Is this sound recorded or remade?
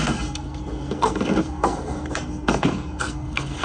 remade